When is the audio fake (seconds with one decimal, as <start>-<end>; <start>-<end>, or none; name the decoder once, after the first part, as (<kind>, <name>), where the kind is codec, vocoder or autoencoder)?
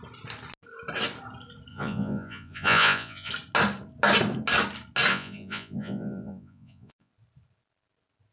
1.7-3.3 (vocoder, Vocos); 5.1-7.1